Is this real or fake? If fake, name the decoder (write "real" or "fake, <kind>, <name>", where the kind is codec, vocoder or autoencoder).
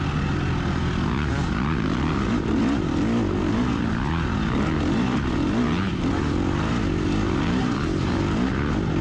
real